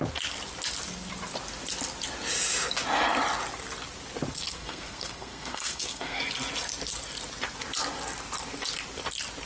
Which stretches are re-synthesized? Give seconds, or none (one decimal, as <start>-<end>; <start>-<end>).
4.5-6.2